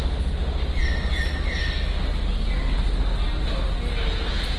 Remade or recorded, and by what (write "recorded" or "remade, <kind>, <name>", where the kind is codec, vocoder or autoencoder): recorded